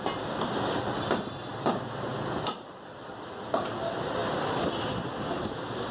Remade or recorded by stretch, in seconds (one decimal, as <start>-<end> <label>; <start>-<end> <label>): 0.0-5.9 recorded